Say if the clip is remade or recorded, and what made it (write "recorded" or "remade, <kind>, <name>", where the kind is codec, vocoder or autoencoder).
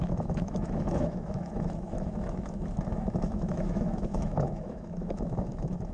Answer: remade, autoencoder, DAC-VAE